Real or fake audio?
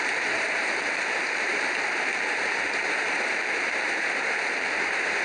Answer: fake